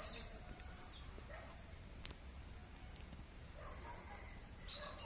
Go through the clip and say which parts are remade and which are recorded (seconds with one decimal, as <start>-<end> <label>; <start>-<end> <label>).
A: 0.0-2.6 remade; 2.6-3.3 recorded; 3.3-5.1 remade